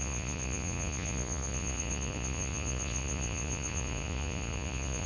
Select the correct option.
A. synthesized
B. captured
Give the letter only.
A